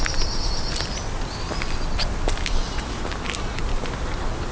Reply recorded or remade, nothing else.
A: recorded